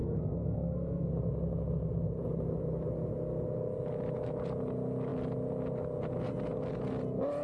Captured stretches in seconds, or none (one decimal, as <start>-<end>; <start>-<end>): 1.1-7.4